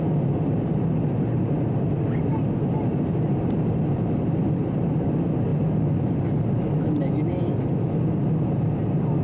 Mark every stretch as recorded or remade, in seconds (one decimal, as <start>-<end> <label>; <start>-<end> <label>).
0.0-9.2 recorded